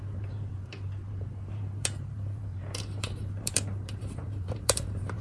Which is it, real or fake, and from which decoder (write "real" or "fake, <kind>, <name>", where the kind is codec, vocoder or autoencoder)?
fake, vocoder, BigVGAN v2